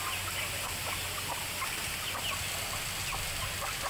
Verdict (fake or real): real